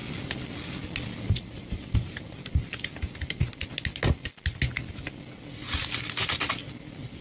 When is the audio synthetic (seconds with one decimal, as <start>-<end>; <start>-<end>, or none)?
none